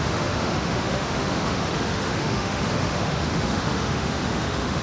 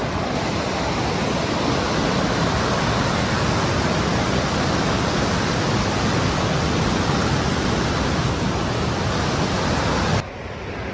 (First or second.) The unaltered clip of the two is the second